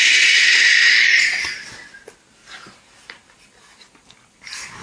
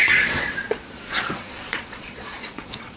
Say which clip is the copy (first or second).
second